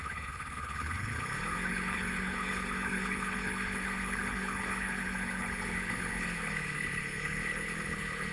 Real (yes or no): no